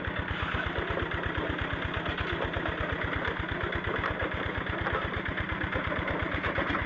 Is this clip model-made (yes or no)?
no